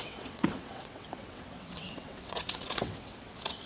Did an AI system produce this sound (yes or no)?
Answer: yes